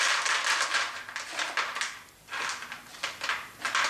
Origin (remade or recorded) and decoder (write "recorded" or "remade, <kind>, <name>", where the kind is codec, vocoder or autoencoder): recorded